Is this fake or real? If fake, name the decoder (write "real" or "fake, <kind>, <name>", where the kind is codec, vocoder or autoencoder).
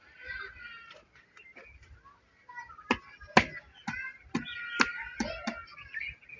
real